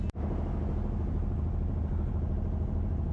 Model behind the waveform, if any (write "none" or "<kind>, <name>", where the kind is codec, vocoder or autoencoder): none